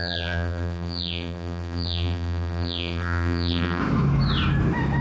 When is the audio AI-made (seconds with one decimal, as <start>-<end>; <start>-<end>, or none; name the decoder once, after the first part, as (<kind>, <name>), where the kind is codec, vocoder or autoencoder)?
0.0-3.8 (vocoder, BigVGAN v2)